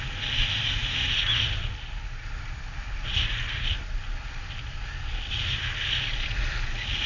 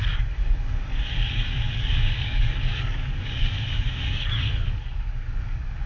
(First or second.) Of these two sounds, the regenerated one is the second